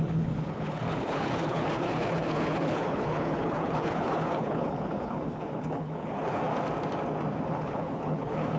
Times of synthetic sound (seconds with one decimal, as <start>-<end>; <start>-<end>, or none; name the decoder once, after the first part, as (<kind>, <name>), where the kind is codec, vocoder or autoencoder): 0.0-6.5 (codec, HILCodec); 7.5-8.6